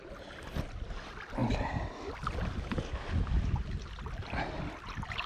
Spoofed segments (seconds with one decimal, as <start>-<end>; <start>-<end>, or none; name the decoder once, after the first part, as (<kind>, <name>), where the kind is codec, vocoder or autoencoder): none